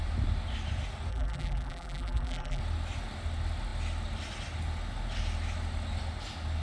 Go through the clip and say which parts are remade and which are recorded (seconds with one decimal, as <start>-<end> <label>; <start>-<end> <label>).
0.0-1.1 recorded; 1.1-2.6 remade; 2.6-6.6 recorded